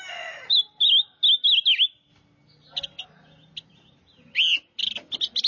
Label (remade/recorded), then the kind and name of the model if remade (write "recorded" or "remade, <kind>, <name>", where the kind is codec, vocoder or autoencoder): recorded